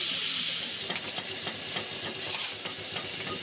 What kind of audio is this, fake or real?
real